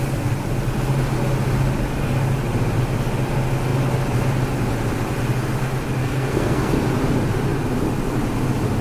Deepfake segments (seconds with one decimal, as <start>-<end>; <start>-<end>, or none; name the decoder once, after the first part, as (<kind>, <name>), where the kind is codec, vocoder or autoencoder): 6.0-6.7 (codec, SNAC)